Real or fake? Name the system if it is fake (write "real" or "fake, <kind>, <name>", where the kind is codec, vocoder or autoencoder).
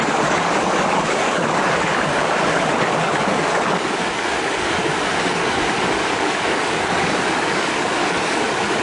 fake, codec, DAC